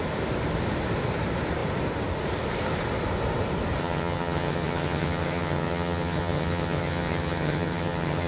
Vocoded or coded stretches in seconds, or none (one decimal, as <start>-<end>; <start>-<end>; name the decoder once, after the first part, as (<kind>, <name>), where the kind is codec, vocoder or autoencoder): 3.8-8.3 (vocoder, HiFi-GAN)